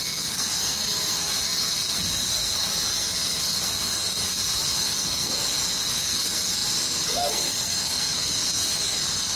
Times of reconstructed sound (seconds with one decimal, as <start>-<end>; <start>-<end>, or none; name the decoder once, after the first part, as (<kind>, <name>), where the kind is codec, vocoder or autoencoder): 0.0-9.4 (codec, SNAC)